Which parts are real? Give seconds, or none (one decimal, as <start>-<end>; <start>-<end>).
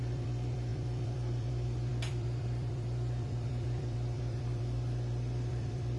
none